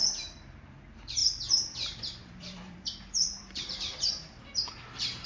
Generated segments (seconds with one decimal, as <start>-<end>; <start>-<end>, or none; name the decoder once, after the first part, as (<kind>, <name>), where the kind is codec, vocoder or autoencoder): 0.0-5.3 (vocoder, BigVGAN v2)

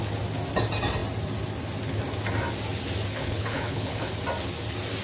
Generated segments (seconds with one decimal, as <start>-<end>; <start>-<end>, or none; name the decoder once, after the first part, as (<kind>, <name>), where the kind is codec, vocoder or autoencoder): 3.1-4.1 (codec, HILCodec)